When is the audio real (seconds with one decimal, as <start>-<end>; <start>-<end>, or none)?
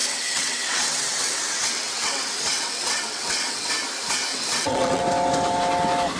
3.7-4.3; 5.0-6.2